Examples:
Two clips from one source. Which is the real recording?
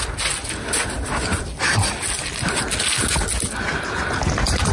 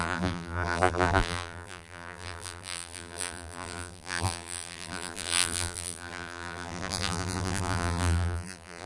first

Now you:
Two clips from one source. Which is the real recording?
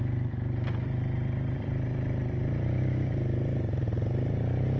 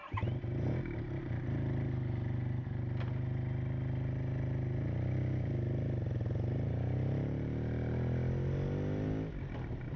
second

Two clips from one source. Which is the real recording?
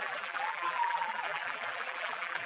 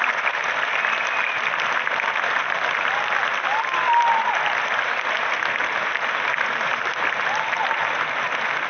second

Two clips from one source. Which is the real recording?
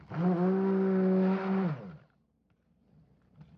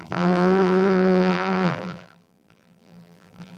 first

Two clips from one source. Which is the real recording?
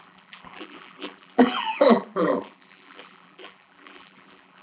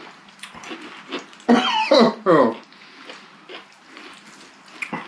second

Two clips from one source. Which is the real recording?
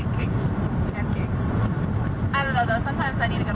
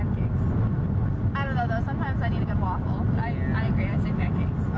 second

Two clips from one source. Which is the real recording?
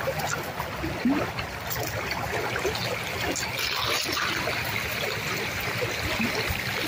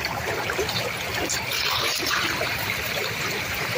first